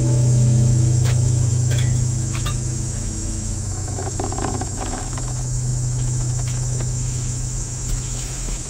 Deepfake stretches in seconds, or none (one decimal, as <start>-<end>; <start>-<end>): 0.0-8.7